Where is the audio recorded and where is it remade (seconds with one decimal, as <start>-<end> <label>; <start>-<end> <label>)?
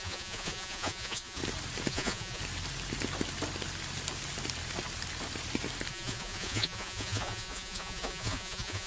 0.0-1.4 remade; 1.4-1.9 recorded; 1.9-2.4 remade; 2.4-5.9 recorded; 5.9-8.9 remade